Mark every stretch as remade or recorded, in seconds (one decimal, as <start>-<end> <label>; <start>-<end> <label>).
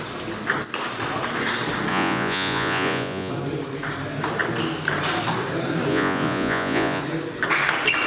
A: 0.0-1.9 recorded; 1.9-3.3 remade; 3.3-5.9 recorded; 5.9-7.0 remade; 7.0-8.1 recorded